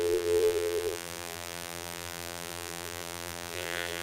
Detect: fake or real fake